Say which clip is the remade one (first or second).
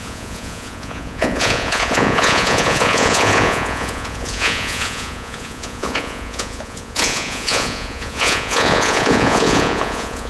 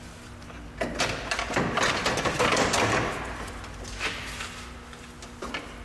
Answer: first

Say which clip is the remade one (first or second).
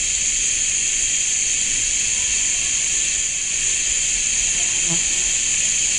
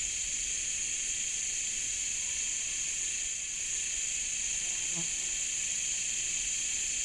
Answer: first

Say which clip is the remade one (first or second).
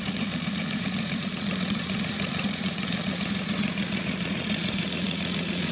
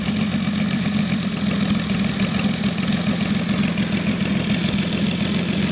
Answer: first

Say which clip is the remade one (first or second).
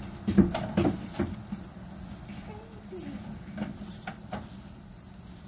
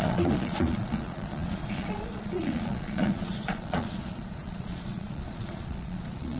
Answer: second